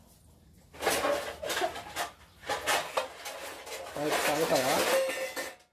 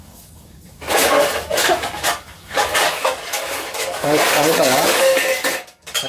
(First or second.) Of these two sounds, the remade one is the second